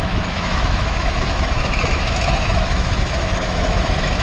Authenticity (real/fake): fake